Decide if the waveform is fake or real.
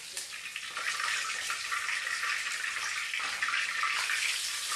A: real